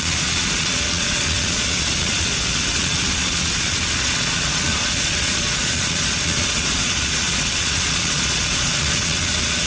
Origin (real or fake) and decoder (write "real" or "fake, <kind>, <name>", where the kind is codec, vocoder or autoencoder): fake, vocoder, Vocos